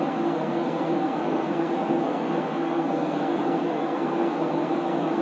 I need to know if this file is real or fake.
fake